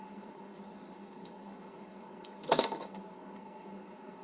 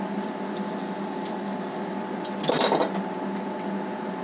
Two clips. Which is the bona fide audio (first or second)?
second